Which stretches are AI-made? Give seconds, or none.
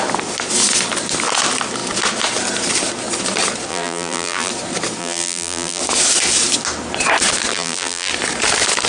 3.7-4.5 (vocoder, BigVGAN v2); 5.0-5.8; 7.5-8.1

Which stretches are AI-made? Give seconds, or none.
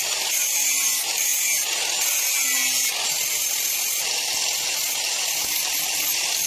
0.0-1.3 (vocoder, BigVGAN v2); 5.2-6.5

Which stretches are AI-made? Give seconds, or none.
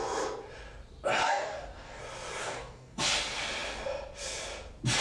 1.2-2.0 (codec, DAC); 2.4-3.0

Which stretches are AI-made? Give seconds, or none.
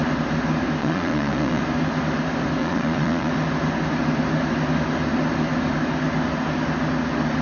0.8-1.6 (vocoder, Vocos); 2.6-3.3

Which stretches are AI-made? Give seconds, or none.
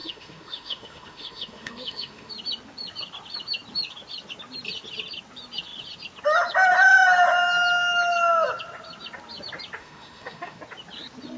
0.0-2.3 (autoencoder, DAC-VAE); 9.8-10.6